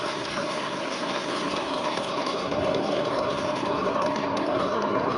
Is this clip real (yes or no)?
no